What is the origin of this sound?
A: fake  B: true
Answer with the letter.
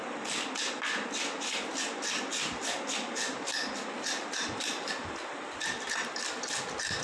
B